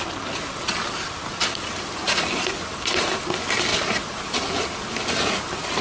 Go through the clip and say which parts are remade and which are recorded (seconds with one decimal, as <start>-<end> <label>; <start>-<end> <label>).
0.0-5.8 recorded